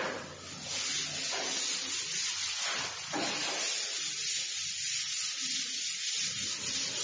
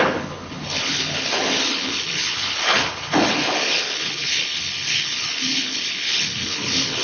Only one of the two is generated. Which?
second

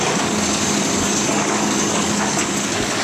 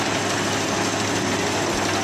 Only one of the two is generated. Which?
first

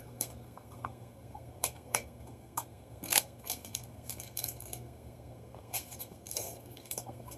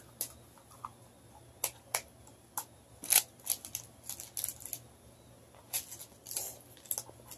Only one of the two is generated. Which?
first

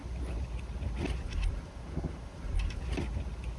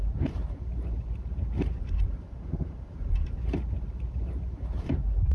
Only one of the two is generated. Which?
second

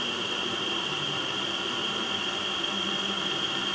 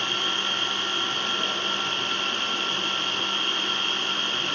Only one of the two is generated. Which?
first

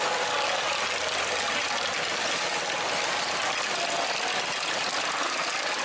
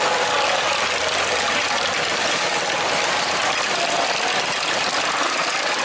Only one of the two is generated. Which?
second